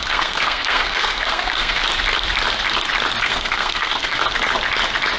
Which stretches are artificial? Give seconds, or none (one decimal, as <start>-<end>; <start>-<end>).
0.0-1.8; 3.2-4.2